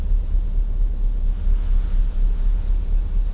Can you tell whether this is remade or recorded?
recorded